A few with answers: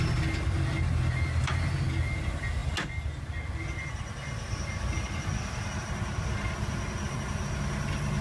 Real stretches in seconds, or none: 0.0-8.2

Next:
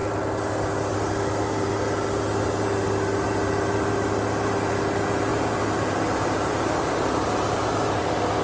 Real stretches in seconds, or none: 0.0-5.3; 8.0-8.4

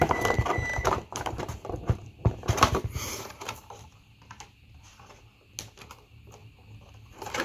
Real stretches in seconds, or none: 0.0-0.7; 5.1-7.4

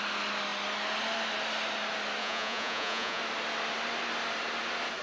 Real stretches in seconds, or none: 0.0-2.2; 3.2-5.0